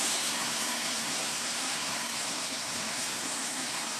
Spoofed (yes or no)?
yes